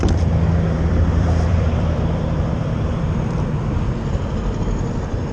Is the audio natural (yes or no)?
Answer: no